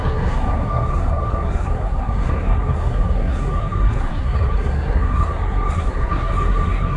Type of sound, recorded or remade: remade